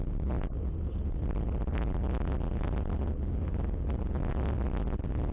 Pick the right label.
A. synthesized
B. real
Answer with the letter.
B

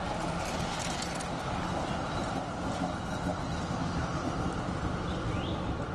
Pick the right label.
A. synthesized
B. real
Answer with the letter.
B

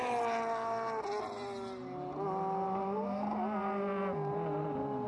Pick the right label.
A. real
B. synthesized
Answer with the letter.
A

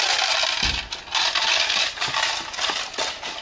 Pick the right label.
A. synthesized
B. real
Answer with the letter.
B